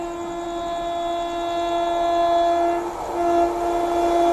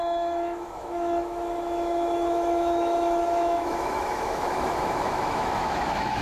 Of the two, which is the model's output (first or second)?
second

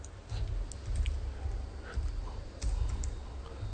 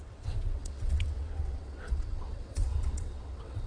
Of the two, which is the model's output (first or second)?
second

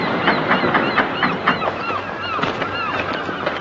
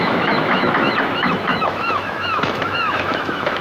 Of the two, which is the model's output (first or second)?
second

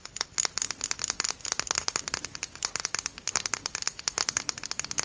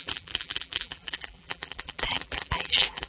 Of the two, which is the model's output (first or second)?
second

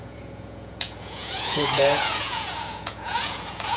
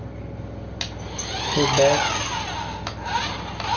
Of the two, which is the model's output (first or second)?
first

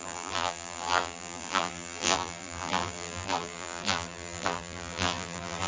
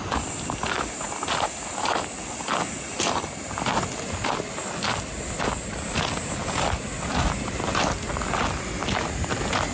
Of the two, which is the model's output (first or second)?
first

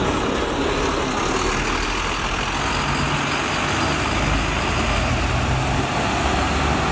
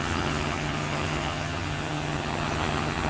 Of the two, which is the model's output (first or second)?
second